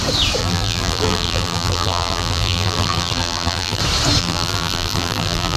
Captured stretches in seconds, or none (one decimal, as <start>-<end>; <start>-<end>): 0.0-0.4; 3.8-4.2